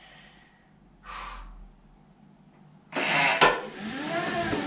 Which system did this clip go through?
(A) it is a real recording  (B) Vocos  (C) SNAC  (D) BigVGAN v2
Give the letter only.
A